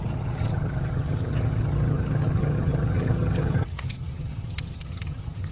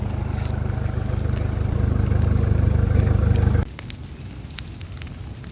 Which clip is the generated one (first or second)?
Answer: first